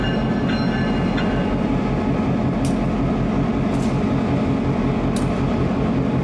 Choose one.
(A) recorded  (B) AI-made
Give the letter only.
A